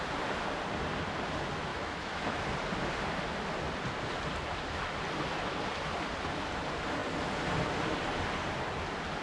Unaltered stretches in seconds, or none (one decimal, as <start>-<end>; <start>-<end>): 0.0-1.7; 2.4-9.2